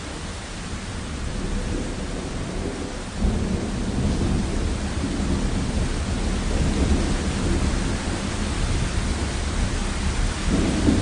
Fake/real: real